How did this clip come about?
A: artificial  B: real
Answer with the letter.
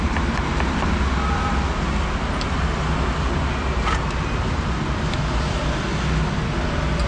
B